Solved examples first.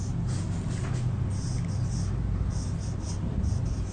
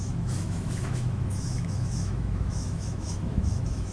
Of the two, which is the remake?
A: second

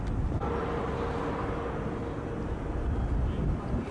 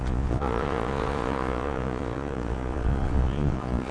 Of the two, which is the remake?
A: second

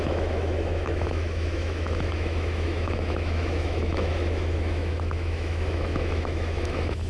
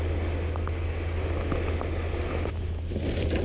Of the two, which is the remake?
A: first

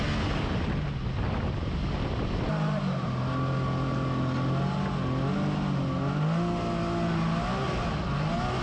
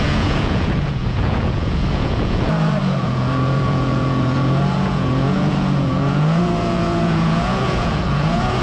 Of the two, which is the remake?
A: second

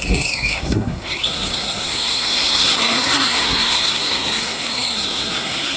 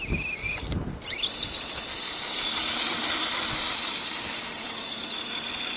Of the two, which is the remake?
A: first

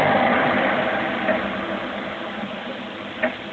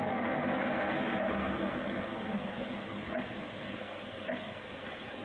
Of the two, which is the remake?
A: second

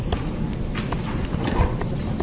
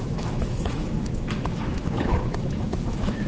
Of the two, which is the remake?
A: second